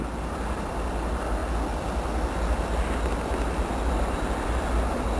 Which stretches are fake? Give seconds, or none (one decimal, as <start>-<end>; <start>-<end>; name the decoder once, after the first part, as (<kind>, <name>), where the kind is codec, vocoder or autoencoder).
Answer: 0.0-1.4 (vocoder, BigVGAN v2); 3.9-5.2